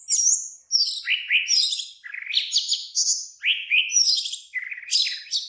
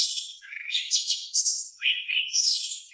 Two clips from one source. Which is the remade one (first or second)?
second